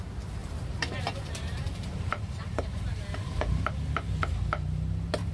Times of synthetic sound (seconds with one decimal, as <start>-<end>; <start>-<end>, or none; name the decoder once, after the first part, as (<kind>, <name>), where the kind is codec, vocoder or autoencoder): 0.4-3.6 (vocoder, BigVGAN v2)